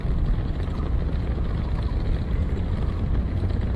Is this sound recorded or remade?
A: recorded